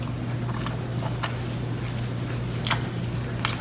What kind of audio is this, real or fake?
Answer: real